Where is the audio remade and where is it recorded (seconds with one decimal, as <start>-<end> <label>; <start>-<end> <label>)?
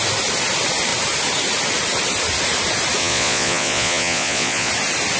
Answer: 0.0-3.0 recorded; 3.0-4.7 remade; 4.7-5.2 recorded